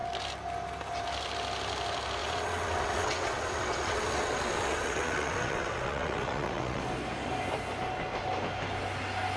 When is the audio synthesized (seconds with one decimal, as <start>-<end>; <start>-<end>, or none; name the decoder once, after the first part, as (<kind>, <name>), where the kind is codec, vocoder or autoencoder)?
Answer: 2.2-6.8 (vocoder, WaveNeXt)